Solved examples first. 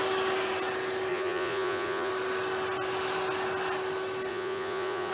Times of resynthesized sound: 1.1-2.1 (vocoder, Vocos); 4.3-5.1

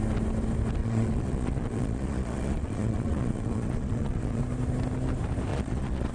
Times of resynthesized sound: 0.8-4.4 (vocoder, Vocos); 5.5-6.1

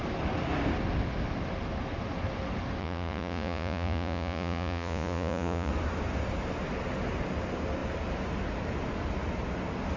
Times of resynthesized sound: 2.8-5.7 (vocoder, Vocos)

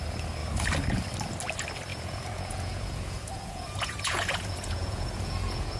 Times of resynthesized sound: 1.9-5.8 (vocoder, Vocos)

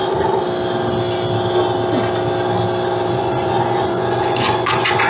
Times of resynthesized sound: 3.1-5.1 (vocoder, Vocos)

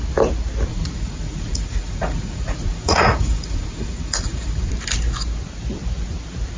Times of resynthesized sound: 0.7-4.7 (vocoder, Vocos)